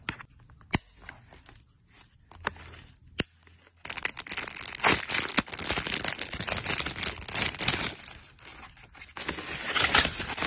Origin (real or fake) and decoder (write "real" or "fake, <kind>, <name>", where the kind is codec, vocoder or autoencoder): real